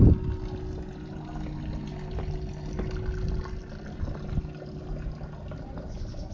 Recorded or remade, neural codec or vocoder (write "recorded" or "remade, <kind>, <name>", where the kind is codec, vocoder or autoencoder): recorded